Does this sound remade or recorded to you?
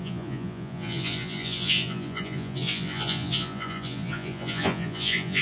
remade